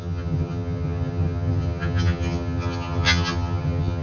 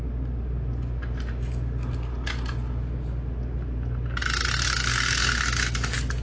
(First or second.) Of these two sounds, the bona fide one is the second